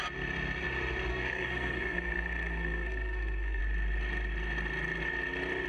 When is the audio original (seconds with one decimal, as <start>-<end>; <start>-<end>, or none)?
0.0-1.1; 3.6-5.7